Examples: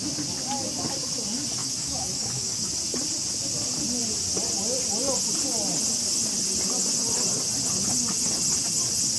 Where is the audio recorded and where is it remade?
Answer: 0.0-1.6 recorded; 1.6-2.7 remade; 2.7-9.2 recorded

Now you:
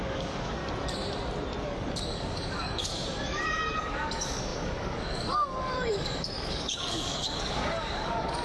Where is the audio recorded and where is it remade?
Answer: 0.0-0.6 remade; 0.6-1.6 recorded; 1.6-8.4 remade